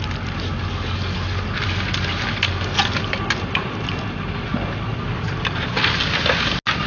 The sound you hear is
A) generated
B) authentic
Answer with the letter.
B